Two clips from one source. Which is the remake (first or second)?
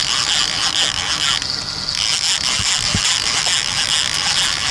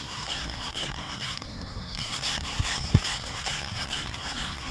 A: second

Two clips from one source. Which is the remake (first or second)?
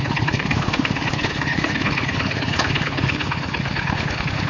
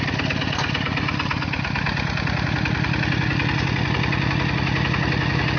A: first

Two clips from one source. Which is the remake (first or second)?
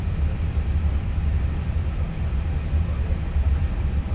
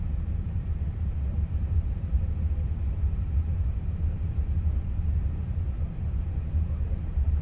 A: second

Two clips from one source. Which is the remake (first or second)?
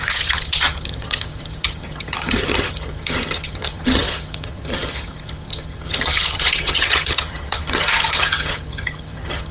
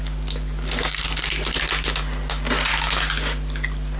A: first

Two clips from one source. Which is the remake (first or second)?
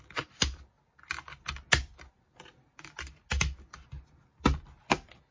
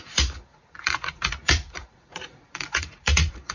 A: second